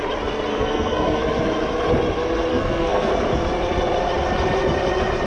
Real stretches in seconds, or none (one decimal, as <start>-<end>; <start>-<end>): 0.0-0.5; 1.2-2.5; 3.1-5.3